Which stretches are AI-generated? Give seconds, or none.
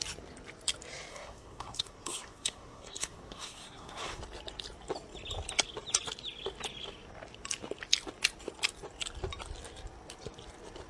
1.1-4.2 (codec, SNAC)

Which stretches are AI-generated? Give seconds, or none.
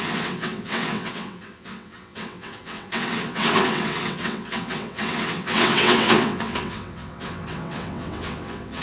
0.0-8.8 (vocoder, WaveNeXt)